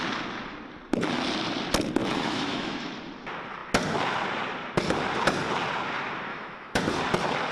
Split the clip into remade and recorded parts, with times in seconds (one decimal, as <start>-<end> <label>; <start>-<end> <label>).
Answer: 0.0-2.0 recorded; 2.0-2.9 remade; 2.9-6.3 recorded; 6.3-6.8 remade; 6.8-7.5 recorded

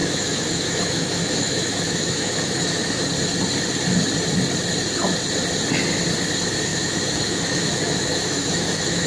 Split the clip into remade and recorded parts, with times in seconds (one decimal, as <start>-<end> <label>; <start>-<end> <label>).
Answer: 0.0-3.0 remade; 3.0-6.7 recorded; 6.7-9.1 remade

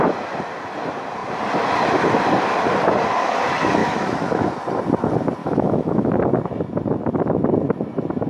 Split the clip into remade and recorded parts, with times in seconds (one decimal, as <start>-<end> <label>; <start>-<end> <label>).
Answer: 0.0-3.8 recorded; 3.8-4.5 remade; 4.5-5.4 recorded; 5.4-6.1 remade; 6.1-8.3 recorded

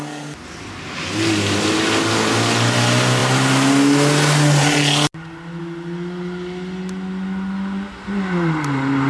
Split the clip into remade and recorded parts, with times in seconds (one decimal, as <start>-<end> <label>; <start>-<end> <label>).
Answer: 0.0-9.1 recorded

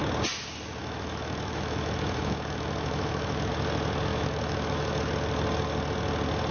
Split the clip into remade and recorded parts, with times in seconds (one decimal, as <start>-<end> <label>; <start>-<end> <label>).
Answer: 0.0-0.8 recorded; 0.8-3.5 remade; 3.5-4.1 recorded; 4.1-5.0 remade; 5.0-6.5 recorded